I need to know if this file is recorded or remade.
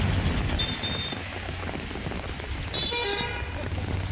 recorded